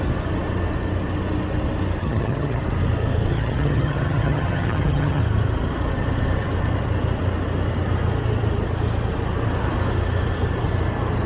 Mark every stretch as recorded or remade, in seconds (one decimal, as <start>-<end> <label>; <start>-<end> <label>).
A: 0.0-2.0 recorded; 2.0-2.6 remade; 2.6-3.3 recorded; 3.3-5.2 remade; 5.2-11.3 recorded